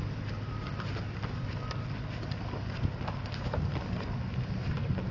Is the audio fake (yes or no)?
no